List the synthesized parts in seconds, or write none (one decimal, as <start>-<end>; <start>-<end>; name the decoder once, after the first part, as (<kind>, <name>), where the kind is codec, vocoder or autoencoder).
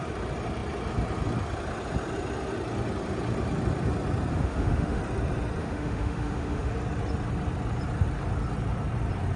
4.3-5.0 (autoencoder, DAC-VAE); 5.6-6.7